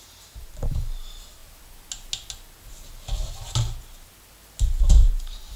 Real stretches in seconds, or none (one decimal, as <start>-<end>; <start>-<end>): 1.4-4.8